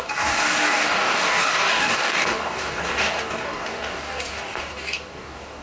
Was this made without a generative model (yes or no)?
no